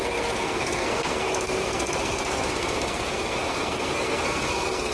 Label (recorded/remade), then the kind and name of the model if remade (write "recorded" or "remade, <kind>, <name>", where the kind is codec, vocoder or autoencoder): remade, codec, SNAC